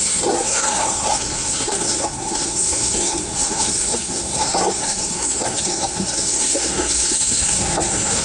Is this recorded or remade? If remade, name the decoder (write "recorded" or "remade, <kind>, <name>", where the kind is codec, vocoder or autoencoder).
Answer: remade, codec, SNAC